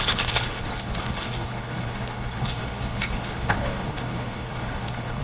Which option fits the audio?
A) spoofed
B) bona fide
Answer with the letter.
A